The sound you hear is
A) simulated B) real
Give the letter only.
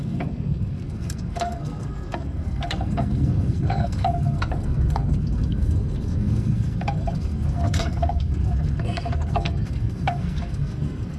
A